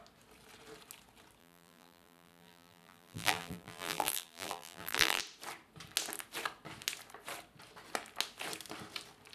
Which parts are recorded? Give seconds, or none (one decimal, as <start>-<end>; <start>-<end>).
0.0-1.4; 5.2-9.3

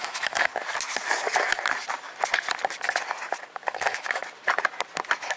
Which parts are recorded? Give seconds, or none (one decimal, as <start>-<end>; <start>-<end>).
0.5-3.7; 4.2-5.4

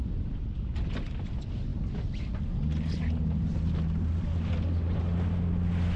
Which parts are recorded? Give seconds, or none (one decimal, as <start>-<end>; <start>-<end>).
0.0-6.0